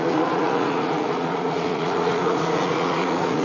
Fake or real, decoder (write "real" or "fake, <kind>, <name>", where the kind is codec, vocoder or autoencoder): fake, vocoder, Vocos